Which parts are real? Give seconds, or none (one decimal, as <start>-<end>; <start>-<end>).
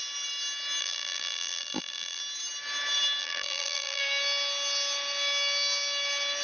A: 0.0-0.8; 2.2-3.2; 4.0-6.4